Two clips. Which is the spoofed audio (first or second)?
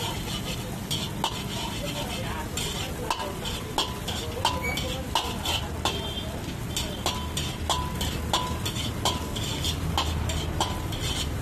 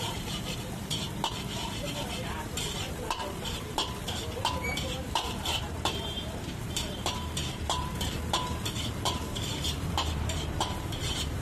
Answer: second